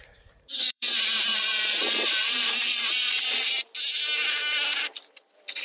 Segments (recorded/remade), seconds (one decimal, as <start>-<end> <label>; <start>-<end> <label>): 0.0-3.4 remade; 3.4-5.6 recorded